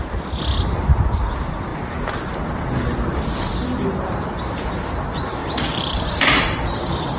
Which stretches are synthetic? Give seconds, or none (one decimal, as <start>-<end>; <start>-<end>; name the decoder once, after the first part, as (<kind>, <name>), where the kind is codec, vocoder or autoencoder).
5.4-6.1 (vocoder, BigVGAN v2)